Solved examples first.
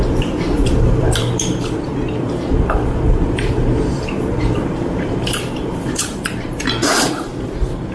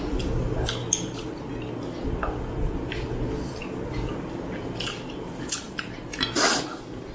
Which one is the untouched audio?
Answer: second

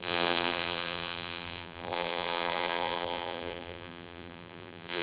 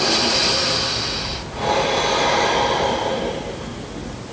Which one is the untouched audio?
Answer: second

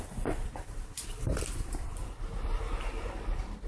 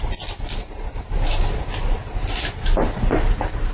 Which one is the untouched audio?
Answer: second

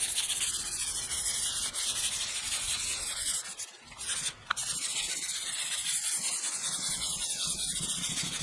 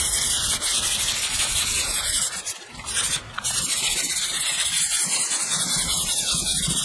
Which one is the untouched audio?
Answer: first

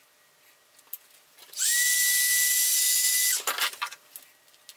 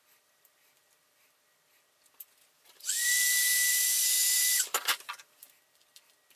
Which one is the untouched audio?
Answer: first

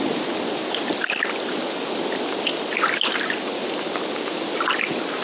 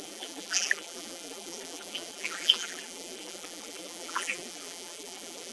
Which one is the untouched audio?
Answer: first